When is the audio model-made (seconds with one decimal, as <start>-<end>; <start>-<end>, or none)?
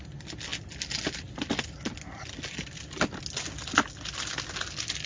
none